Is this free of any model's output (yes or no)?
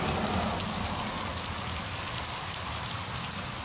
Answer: yes